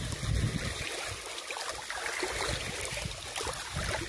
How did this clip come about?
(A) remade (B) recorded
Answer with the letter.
B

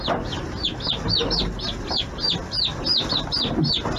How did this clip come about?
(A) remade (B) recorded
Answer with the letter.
B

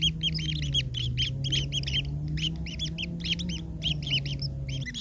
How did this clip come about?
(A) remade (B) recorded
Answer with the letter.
B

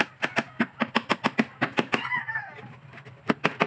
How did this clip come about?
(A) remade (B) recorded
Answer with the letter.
B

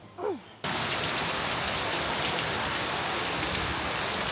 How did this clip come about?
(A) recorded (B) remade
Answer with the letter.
A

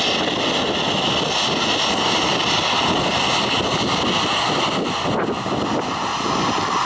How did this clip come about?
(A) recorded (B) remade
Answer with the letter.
A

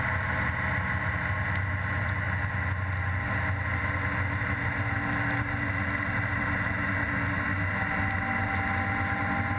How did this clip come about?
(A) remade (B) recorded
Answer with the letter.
B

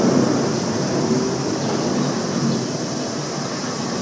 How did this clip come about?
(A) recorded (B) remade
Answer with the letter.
A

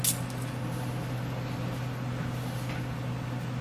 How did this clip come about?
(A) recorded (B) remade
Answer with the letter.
A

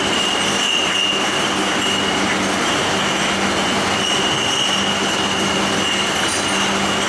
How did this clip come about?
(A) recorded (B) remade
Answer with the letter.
A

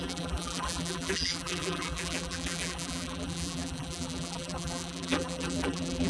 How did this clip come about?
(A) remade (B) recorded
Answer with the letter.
A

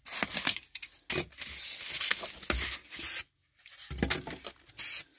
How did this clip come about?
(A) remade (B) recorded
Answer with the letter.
B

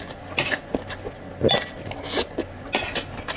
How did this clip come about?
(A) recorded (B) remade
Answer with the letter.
A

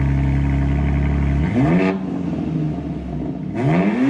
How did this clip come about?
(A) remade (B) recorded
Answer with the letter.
B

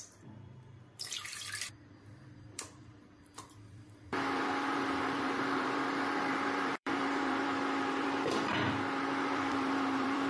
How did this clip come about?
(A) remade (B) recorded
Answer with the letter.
A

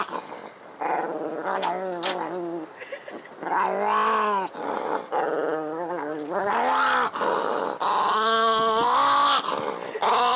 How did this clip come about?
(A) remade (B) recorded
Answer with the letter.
B